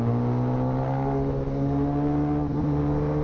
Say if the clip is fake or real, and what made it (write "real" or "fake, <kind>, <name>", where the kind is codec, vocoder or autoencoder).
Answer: real